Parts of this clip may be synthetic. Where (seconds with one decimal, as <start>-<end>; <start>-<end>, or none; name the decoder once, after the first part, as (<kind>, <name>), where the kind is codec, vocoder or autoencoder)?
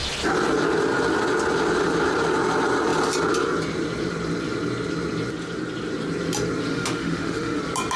6.7-7.6 (autoencoder, DAC-VAE)